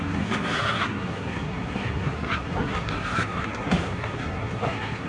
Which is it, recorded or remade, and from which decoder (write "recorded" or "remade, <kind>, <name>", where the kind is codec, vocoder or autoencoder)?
remade, codec, SNAC